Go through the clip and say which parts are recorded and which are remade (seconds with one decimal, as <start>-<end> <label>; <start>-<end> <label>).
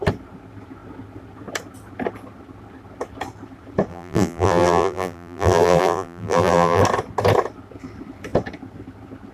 0.0-3.9 recorded; 3.9-6.8 remade; 6.8-9.3 recorded